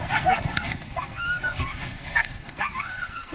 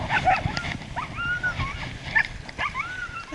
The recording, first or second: second